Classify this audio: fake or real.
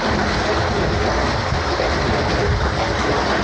real